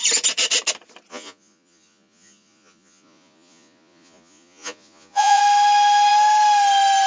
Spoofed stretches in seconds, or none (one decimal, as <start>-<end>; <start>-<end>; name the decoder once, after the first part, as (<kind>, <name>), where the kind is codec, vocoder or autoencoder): 1.1-5.4 (vocoder, Vocos)